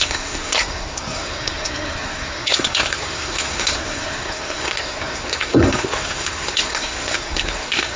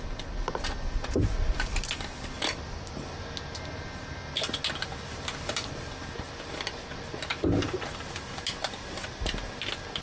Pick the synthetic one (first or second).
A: first